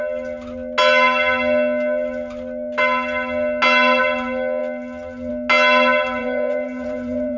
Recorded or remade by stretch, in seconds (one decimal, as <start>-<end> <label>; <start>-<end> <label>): 0.0-6.2 recorded; 6.2-7.4 remade

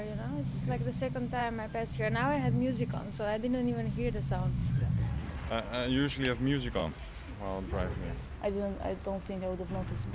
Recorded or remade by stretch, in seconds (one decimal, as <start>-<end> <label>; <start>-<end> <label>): 0.0-4.6 recorded; 4.6-5.5 remade; 5.5-6.8 recorded; 6.8-7.3 remade; 7.3-10.1 recorded

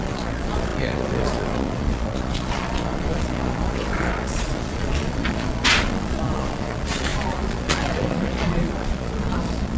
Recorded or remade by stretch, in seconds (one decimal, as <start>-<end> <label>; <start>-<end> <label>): 0.0-9.8 remade

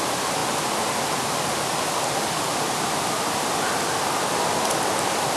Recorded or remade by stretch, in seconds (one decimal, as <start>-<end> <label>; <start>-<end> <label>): 0.0-5.4 recorded

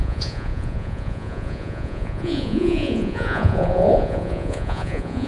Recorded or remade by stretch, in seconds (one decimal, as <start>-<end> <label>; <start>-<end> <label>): 0.0-5.3 remade

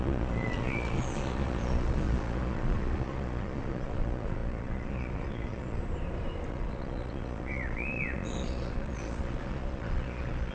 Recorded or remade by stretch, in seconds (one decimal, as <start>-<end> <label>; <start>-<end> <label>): 0.0-5.8 remade; 5.8-6.5 recorded; 6.5-10.5 remade

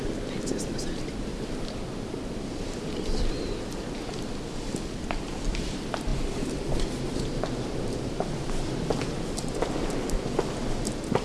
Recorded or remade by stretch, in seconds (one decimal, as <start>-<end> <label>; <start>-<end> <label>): 0.0-11.2 recorded

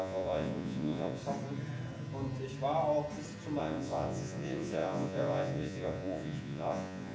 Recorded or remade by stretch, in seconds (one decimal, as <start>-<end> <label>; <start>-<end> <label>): 0.0-1.2 remade; 1.2-3.6 recorded; 3.6-7.1 remade